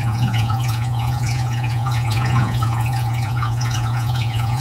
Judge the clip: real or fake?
fake